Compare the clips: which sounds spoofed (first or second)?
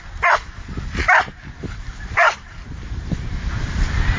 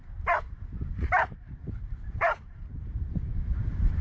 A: second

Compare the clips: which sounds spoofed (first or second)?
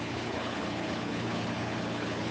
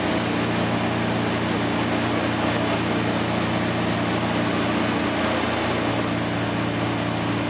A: first